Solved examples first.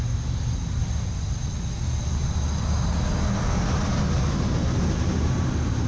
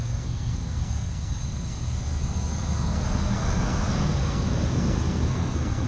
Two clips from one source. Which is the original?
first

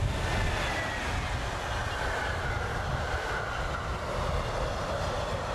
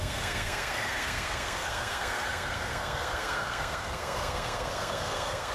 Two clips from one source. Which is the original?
first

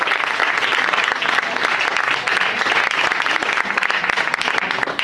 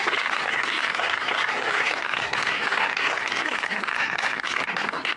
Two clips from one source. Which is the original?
first